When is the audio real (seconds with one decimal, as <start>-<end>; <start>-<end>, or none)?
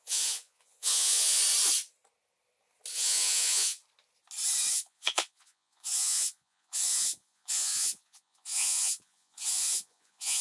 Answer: 1.4-2.9; 3.8-4.7